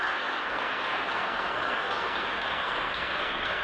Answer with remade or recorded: remade